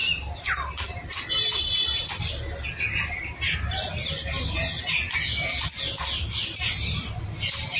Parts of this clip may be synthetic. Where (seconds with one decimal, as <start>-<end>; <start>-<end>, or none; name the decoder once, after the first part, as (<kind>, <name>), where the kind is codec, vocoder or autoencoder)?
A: none